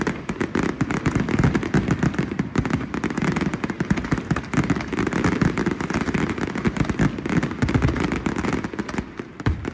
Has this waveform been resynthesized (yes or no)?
no